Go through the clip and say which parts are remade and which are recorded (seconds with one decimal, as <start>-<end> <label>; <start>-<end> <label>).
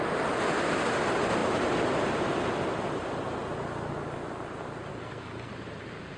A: 0.0-4.9 recorded; 4.9-5.5 remade; 5.5-6.2 recorded